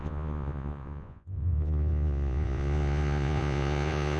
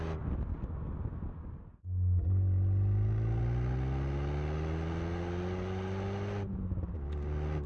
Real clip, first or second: second